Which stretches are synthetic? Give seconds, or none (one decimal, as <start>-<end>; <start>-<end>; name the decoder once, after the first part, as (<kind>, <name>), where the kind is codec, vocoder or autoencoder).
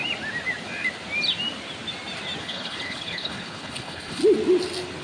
2.4-4.2 (codec, HILCodec)